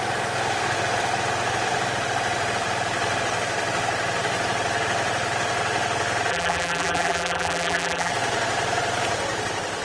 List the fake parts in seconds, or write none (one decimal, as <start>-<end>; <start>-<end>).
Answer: 6.3-8.1